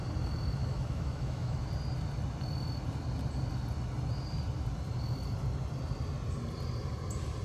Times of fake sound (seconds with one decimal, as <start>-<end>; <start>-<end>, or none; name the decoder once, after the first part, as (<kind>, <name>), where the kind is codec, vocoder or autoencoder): 0.6-1.7 (autoencoder, DAC-VAE)